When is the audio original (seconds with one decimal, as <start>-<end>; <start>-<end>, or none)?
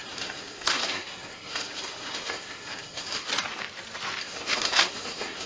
3.3-4.2